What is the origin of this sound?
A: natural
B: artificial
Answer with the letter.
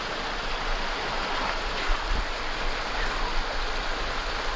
A